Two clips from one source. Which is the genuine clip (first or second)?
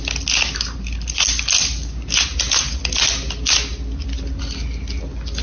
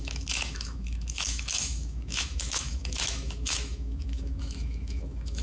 first